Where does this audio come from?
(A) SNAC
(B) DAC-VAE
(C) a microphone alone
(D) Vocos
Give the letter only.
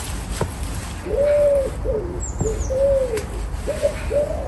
C